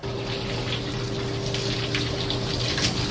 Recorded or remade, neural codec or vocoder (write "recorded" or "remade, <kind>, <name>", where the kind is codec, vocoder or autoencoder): recorded